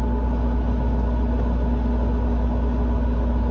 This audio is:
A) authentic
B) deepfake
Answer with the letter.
A